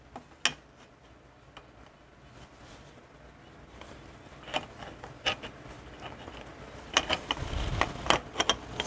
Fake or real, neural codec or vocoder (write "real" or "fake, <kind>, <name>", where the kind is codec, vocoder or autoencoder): real